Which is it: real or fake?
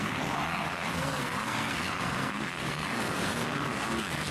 fake